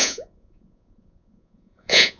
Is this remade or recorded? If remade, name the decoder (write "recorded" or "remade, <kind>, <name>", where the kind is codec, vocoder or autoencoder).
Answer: remade, vocoder, Vocos